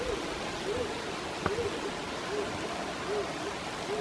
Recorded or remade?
recorded